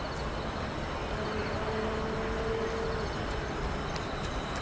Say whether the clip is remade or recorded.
recorded